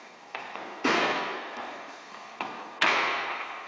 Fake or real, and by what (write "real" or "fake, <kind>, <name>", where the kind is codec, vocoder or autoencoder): fake, codec, SNAC